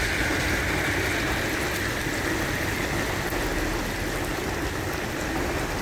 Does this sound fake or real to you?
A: real